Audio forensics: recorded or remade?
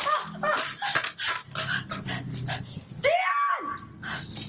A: recorded